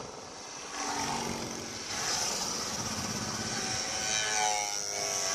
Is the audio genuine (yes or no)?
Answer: yes